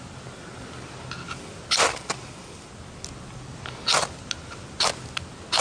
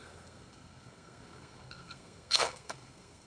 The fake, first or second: second